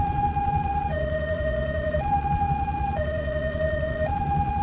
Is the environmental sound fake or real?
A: fake